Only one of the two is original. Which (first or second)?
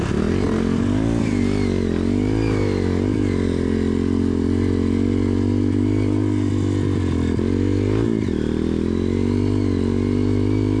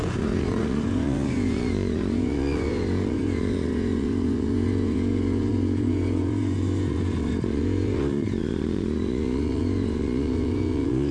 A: first